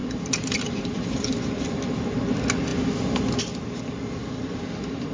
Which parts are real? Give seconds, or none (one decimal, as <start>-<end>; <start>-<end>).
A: 2.2-4.2